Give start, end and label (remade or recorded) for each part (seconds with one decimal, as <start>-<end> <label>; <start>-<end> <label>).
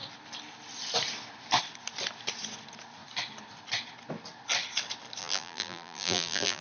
0.0-5.2 recorded; 5.2-6.6 remade